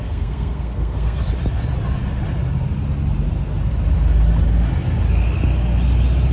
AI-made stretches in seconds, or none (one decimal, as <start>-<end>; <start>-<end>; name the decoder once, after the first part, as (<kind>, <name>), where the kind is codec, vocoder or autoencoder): 0.0-1.2 (codec, SNAC)